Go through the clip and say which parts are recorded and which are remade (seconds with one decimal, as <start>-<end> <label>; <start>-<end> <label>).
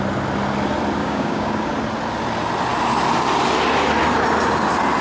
0.0-1.0 recorded; 1.0-1.7 remade; 1.7-5.0 recorded